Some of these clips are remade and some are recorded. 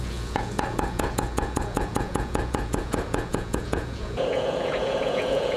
remade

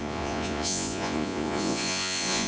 remade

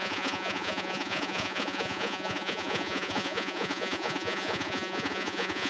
remade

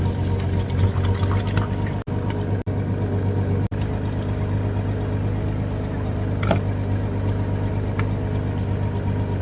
recorded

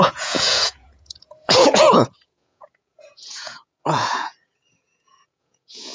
remade